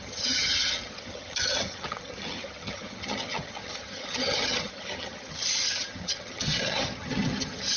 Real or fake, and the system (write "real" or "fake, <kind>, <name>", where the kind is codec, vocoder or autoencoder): fake, vocoder, HiFi-GAN